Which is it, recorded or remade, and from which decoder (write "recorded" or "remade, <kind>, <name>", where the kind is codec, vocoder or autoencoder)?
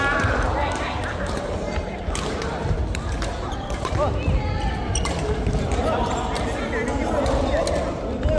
recorded